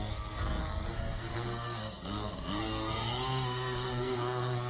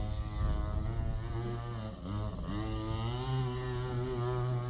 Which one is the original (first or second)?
second